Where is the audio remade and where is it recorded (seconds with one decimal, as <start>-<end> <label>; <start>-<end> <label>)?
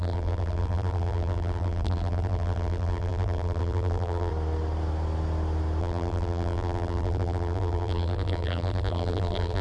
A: 0.0-4.3 remade; 4.3-5.8 recorded; 5.8-9.6 remade